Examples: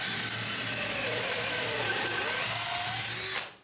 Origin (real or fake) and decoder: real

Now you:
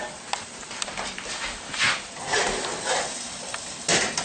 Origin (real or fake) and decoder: real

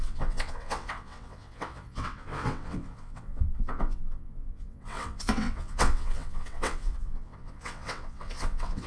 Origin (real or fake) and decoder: fake, vocoder, WaveNeXt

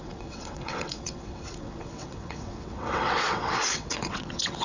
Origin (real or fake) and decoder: fake, vocoder, WaveNeXt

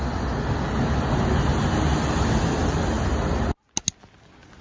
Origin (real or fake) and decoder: real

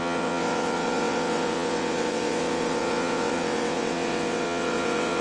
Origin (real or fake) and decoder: fake, vocoder, WaveNeXt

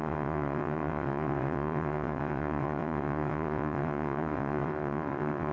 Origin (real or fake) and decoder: fake, vocoder, WaveNeXt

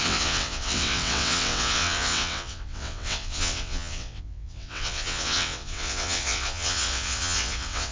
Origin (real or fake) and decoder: fake, vocoder, WaveNeXt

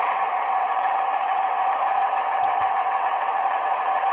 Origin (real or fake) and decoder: fake, vocoder, WaveNeXt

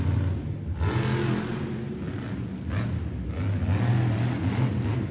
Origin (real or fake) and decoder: real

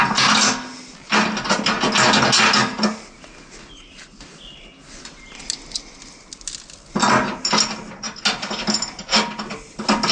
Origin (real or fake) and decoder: real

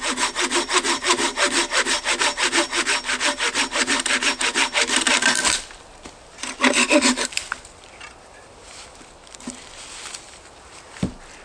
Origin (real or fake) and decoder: real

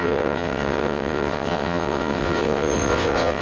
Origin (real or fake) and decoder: fake, vocoder, WaveNeXt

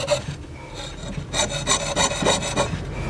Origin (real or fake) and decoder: real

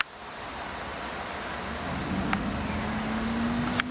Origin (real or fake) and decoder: real